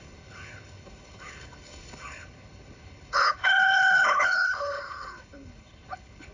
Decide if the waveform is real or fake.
fake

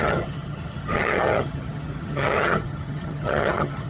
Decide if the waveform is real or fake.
fake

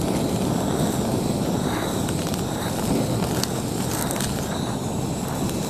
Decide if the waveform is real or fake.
real